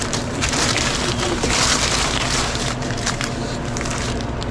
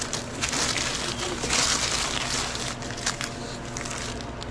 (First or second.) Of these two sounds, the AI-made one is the first